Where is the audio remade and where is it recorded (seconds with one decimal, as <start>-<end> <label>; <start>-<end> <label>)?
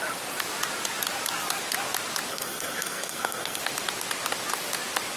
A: 0.0-2.3 recorded; 2.3-3.6 remade; 3.6-5.2 recorded